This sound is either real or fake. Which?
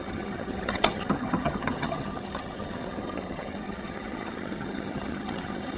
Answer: fake